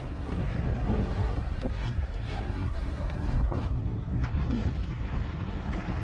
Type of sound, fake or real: fake